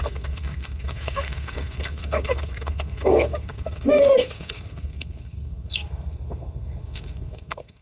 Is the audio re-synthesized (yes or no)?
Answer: yes